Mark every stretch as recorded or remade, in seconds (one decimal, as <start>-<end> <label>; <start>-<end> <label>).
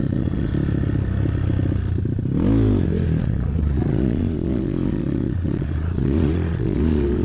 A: 0.0-0.5 remade; 0.5-3.2 recorded; 3.2-7.2 remade